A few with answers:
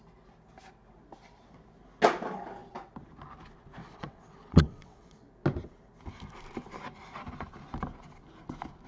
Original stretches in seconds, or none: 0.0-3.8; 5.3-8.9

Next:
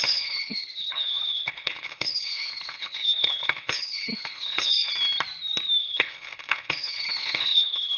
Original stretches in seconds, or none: 4.9-5.8